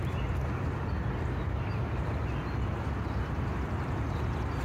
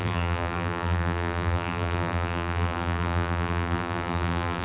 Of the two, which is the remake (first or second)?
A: second